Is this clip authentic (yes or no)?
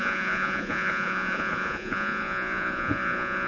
no